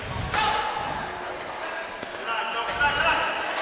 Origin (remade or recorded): recorded